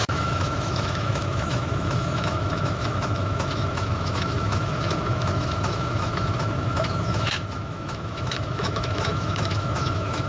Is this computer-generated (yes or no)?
yes